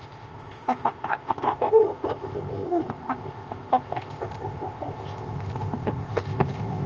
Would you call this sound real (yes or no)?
no